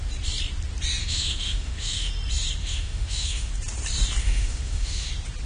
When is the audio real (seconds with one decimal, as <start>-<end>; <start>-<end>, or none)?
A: 0.0-1.0; 2.1-2.6; 3.5-4.2; 5.1-5.5